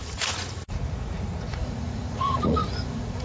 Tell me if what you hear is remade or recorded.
remade